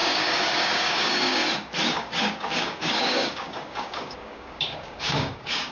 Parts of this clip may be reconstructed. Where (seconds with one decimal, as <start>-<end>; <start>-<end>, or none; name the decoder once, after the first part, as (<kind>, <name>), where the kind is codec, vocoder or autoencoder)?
0.0-1.4 (codec, DAC); 1.9-5.7